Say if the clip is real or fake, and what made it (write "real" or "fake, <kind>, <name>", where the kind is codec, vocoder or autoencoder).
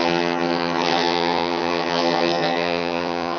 fake, vocoder, HiFi-GAN